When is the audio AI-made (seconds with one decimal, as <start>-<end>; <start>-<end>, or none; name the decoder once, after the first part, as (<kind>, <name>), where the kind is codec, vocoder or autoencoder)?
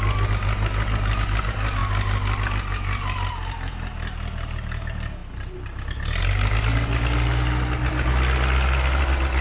none